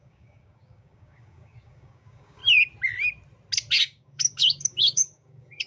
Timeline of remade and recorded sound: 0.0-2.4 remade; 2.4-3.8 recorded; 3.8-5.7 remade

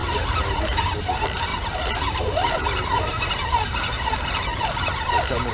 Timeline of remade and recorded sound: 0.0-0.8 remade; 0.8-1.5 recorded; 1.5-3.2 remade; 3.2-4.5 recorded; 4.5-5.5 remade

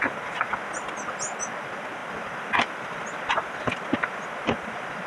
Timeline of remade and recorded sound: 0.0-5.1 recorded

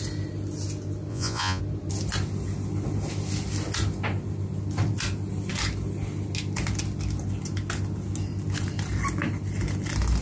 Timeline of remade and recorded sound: 0.0-1.1 recorded; 1.1-1.6 remade; 1.6-10.2 recorded

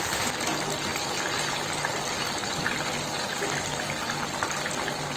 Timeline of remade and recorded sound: 0.0-5.2 recorded